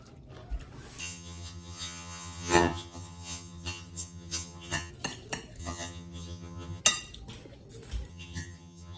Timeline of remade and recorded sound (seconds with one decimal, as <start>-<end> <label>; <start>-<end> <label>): 0.0-1.0 recorded; 1.0-4.9 remade; 4.9-5.6 recorded; 5.6-6.8 remade; 6.8-8.1 recorded; 8.1-9.0 remade